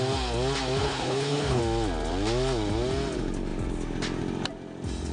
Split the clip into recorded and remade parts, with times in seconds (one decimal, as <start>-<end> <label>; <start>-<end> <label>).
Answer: 0.0-0.8 recorded; 0.8-1.6 remade; 1.6-5.1 recorded